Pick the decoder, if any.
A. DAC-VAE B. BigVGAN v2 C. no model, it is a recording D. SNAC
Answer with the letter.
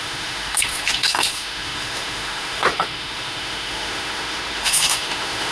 A